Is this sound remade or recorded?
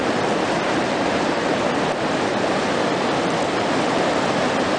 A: recorded